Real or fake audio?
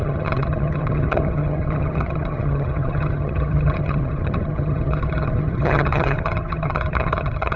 fake